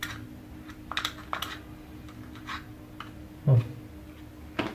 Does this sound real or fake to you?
real